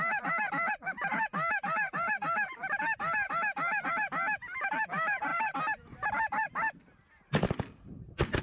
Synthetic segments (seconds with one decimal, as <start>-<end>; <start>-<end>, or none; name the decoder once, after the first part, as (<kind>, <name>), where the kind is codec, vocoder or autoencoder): 5.3-8.4 (vocoder, BigVGAN v2)